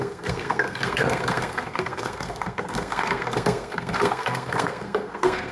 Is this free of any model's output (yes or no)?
no